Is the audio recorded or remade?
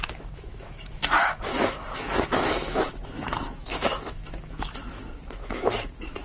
remade